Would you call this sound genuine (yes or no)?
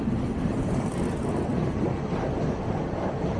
yes